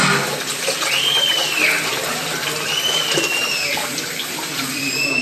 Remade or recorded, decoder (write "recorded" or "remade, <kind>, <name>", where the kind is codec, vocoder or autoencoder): recorded